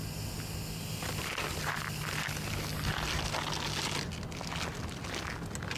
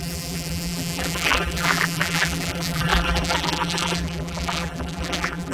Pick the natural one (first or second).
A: first